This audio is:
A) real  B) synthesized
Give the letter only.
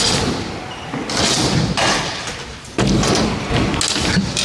A